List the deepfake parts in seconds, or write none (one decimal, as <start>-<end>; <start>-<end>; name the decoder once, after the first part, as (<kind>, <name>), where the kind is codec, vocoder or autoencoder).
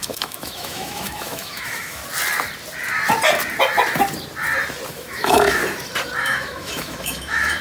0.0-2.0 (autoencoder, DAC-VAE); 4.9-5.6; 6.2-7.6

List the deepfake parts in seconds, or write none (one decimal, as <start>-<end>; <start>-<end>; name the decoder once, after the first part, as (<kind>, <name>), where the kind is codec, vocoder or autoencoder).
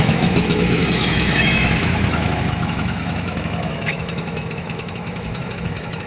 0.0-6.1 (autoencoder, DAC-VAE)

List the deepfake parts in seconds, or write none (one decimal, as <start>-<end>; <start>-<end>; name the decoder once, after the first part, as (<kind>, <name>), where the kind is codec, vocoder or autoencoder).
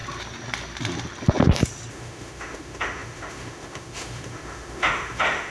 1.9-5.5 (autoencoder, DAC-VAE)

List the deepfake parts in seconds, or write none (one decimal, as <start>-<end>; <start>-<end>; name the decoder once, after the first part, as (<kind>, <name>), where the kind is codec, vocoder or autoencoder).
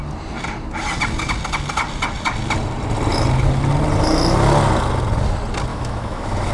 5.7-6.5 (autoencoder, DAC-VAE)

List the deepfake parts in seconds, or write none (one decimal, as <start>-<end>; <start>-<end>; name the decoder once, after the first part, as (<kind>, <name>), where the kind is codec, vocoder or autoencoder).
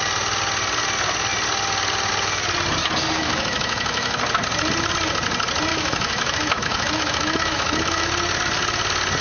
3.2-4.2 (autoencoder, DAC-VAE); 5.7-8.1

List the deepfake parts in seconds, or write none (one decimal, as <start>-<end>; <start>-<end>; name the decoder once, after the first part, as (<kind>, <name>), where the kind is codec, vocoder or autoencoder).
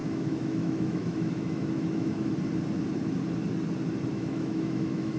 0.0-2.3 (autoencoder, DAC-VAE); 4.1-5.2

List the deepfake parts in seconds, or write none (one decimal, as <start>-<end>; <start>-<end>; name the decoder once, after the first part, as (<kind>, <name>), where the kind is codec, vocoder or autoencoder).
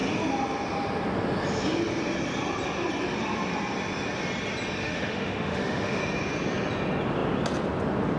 4.8-6.0 (autoencoder, DAC-VAE)